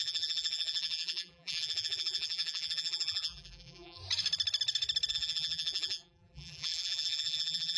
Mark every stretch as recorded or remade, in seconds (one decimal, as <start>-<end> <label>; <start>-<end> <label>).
0.0-4.0 remade; 4.0-5.1 recorded; 5.1-7.8 remade